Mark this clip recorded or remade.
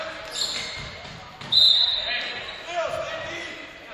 recorded